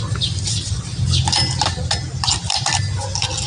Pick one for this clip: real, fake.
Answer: real